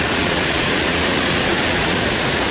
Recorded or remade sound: remade